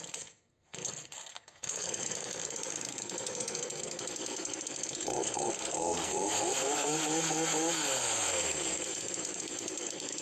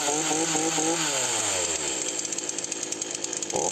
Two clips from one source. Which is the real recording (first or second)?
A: second